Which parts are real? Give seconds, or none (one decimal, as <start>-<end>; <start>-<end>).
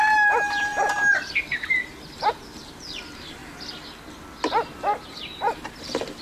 3.4-4.7